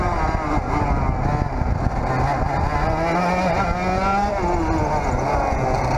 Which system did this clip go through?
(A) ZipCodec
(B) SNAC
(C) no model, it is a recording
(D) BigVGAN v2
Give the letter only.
C